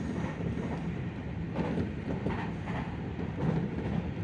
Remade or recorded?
recorded